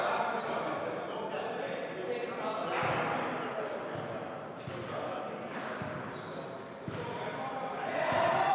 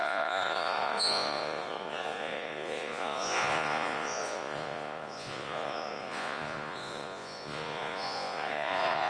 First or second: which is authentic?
first